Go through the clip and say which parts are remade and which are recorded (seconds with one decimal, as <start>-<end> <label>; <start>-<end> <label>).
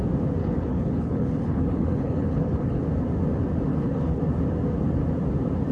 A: 0.0-0.4 recorded; 0.4-2.8 remade; 2.8-3.7 recorded; 3.7-4.2 remade; 4.2-5.7 recorded